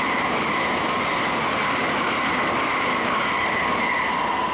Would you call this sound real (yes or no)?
yes